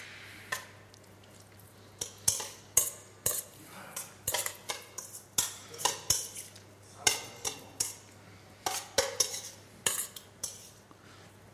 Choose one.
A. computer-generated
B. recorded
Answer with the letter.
B